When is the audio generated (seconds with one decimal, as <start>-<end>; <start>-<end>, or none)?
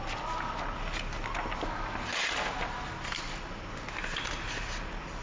none